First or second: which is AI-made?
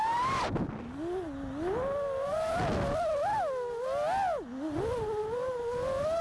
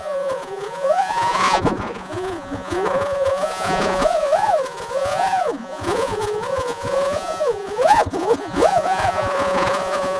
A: second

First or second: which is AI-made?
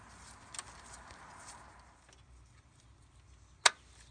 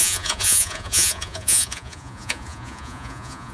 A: second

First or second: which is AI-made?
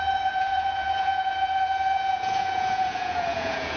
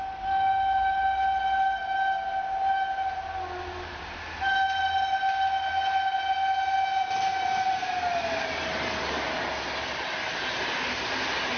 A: first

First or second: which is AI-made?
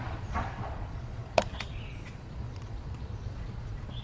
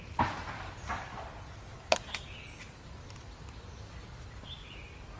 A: first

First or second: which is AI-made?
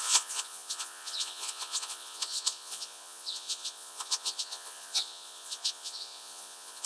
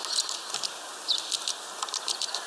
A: first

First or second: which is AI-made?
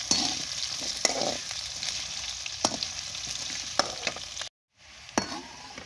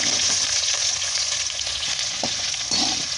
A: second